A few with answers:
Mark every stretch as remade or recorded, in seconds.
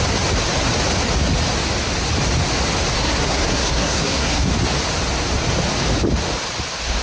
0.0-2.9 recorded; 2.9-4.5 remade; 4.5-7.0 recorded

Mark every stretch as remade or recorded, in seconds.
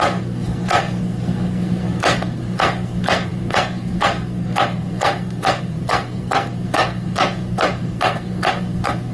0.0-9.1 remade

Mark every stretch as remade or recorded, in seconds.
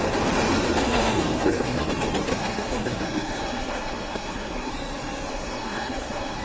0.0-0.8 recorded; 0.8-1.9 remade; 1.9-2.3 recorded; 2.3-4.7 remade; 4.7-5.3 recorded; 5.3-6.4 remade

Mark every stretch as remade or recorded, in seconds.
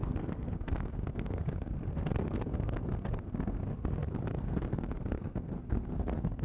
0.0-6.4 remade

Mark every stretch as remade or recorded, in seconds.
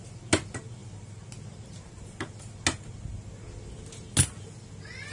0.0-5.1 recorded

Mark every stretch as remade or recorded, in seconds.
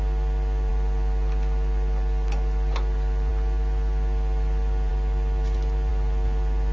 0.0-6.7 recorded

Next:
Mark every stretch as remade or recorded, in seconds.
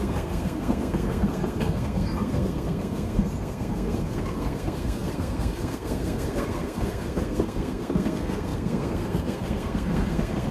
0.0-10.5 remade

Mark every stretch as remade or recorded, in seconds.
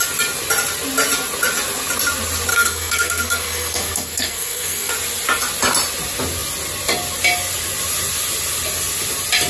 0.0-2.5 recorded; 2.5-4.9 remade; 4.9-9.5 recorded